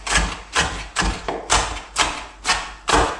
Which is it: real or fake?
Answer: real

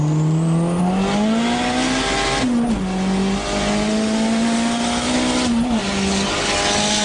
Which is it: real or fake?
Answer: real